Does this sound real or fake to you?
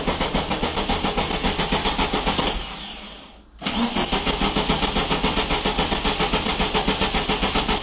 real